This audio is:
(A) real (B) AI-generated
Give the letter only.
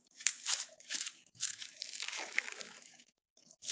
B